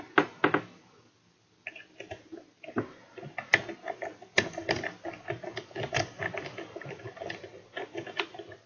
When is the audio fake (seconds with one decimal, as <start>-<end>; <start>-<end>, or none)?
none